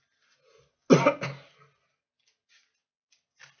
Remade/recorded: recorded